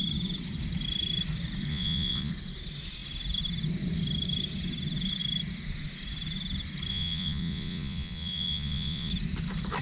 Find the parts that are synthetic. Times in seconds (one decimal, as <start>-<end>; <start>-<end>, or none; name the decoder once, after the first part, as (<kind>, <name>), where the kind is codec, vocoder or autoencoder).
1.7-2.3 (vocoder, Vocos); 6.9-9.1